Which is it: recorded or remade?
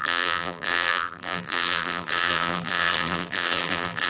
remade